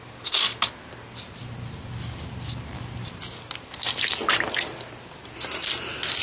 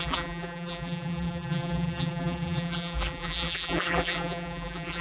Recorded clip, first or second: first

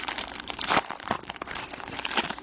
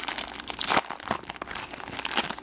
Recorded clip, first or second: second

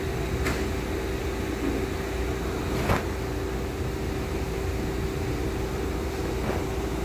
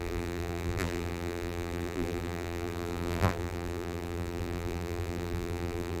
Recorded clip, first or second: first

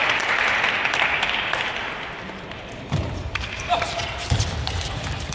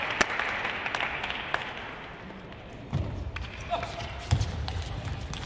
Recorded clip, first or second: second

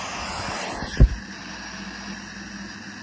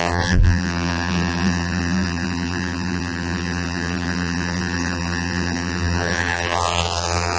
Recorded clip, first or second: first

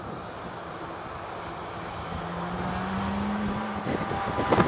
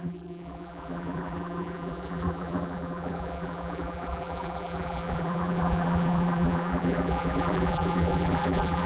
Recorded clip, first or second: first